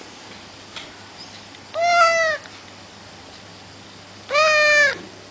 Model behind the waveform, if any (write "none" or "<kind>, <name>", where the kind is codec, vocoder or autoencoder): none